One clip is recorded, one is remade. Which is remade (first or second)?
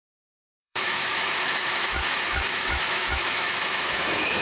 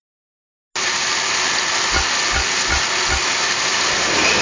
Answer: first